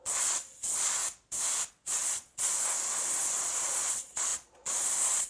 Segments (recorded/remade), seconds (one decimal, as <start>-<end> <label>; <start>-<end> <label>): 0.0-1.0 remade; 1.0-1.7 recorded; 1.7-5.3 remade